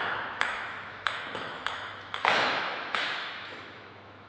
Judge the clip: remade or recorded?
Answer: remade